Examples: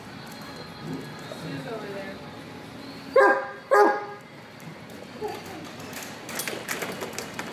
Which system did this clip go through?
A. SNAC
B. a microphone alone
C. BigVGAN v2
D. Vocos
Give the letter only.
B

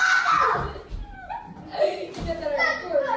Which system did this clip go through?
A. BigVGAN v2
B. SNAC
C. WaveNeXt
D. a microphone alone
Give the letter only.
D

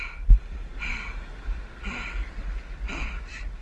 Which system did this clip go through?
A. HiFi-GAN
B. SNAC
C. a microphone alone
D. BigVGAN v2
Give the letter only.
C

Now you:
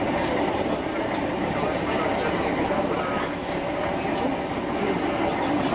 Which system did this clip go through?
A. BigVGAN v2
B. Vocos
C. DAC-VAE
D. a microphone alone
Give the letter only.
D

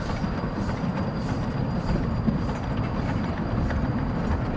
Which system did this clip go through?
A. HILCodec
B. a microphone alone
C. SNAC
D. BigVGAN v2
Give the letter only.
B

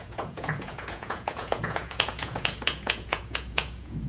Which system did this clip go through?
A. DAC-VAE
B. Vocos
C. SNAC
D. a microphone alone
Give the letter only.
B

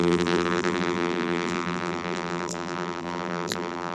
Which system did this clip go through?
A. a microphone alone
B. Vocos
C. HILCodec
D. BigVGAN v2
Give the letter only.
D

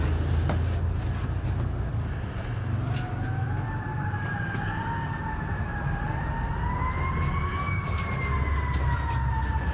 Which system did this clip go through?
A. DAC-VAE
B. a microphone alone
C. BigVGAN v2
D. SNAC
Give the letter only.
B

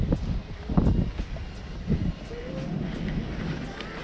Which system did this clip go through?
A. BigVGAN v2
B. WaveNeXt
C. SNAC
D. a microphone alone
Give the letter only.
D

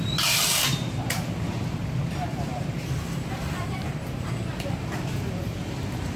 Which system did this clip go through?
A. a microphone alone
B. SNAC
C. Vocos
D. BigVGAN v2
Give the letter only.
D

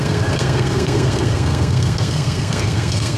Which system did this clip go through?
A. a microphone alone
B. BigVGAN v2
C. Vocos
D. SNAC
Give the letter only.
D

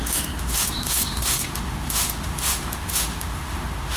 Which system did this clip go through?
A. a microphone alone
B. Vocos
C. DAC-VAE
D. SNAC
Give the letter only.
C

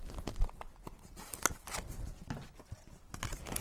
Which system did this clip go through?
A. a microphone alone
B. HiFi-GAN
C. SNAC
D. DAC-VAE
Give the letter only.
A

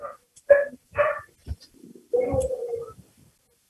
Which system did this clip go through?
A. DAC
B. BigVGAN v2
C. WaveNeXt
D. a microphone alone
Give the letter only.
D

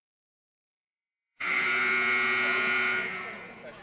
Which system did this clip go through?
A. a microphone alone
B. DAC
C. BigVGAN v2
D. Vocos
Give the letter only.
D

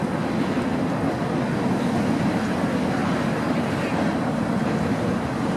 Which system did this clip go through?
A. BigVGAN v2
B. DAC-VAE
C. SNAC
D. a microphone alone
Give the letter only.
D